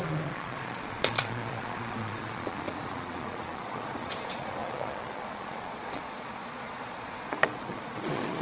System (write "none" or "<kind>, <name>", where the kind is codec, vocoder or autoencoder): vocoder, Vocos